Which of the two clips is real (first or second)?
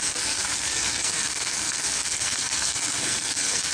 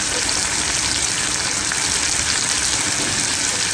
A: second